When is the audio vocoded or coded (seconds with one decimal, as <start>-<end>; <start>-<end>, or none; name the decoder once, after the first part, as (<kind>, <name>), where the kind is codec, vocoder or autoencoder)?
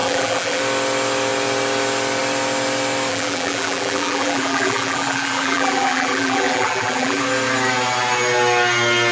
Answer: 0.0-0.6 (vocoder, BigVGAN v2); 3.1-7.2